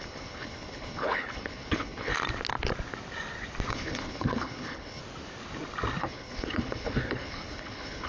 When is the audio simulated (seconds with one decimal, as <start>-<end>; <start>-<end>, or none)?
0.0-2.1; 3.7-5.0; 6.0-8.1